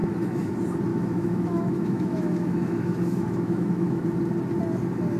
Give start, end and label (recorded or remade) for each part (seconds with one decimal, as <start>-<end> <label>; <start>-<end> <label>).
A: 0.0-0.5 remade; 0.5-0.9 recorded; 0.9-4.0 remade; 4.0-5.2 recorded